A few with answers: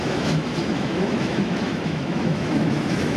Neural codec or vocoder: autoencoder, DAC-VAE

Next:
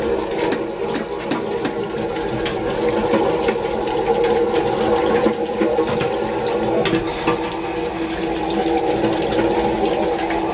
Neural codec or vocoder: none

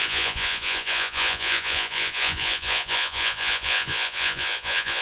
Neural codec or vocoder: vocoder, Vocos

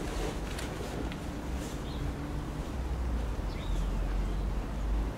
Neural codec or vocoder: none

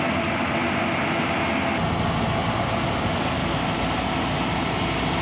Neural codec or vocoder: none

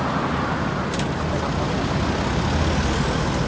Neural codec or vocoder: none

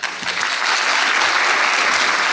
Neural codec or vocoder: none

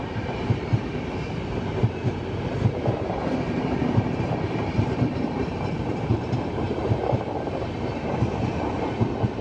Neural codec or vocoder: vocoder, BigVGAN v2